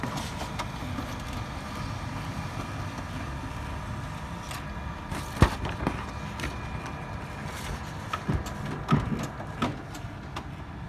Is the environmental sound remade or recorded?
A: recorded